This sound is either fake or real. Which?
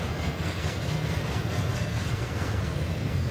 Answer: fake